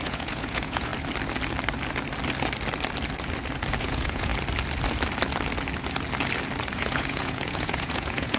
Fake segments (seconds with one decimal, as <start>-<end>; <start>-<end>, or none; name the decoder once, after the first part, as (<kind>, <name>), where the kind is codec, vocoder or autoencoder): 0.0-0.9 (vocoder, Vocos); 3.8-4.3; 6.7-8.4